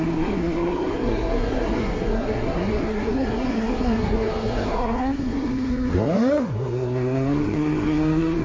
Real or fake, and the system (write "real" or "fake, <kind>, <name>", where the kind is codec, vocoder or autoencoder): fake, codec, SNAC